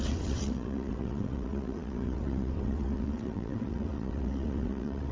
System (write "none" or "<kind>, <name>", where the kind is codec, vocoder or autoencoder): vocoder, WaveNeXt